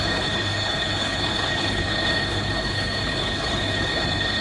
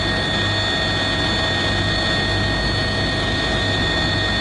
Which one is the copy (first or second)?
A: first